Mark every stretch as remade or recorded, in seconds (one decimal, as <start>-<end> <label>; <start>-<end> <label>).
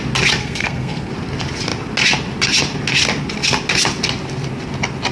0.0-0.4 recorded; 0.4-1.1 remade; 1.1-5.1 recorded